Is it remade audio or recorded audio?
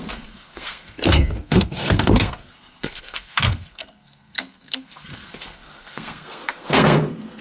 remade